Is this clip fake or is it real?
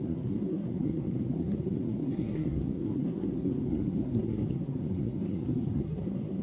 fake